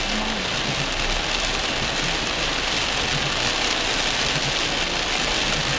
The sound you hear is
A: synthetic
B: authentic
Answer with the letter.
B